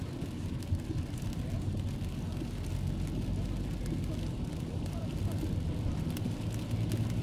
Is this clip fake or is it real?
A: real